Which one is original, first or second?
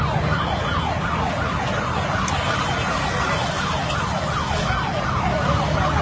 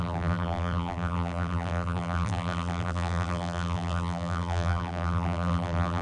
first